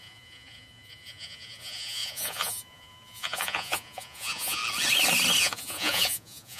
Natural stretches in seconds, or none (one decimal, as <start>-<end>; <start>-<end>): 4.6-5.4